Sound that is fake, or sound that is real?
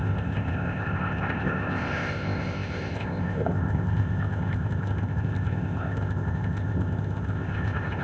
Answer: fake